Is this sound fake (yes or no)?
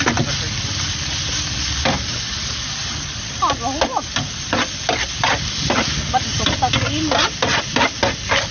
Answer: no